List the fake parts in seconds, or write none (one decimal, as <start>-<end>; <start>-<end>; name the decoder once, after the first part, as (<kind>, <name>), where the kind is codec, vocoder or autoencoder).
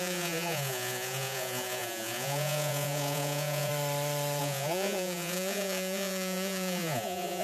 0.0-3.7 (vocoder, Vocos); 4.4-7.4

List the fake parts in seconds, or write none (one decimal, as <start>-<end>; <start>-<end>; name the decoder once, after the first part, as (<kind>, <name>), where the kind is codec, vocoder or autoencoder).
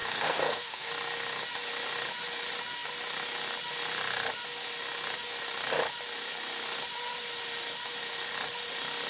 0.0-0.9 (codec, SNAC)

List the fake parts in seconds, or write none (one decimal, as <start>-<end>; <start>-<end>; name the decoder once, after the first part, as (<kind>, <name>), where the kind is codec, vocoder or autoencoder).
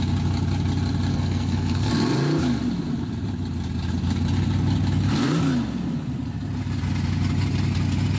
1.1-1.9 (codec, SNAC)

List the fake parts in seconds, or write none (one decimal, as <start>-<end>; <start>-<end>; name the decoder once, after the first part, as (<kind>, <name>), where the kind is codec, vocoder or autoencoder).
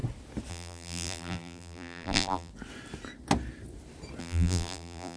0.5-2.5 (vocoder, BigVGAN v2); 4.2-5.2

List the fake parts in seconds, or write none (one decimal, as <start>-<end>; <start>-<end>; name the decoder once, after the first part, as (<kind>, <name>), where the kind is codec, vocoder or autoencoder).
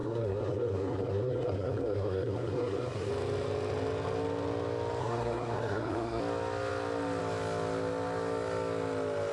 0.0-3.1 (codec, SNAC); 5.0-6.2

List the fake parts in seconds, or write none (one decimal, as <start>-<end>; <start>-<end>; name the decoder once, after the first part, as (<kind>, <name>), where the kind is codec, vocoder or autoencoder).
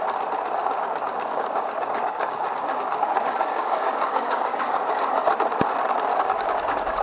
0.6-4.8 (codec, DAC); 6.1-7.0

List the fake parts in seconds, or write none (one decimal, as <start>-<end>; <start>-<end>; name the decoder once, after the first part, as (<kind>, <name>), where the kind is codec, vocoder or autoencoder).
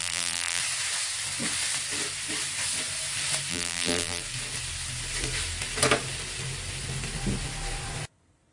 0.0-0.6 (vocoder, BigVGAN v2); 3.5-4.2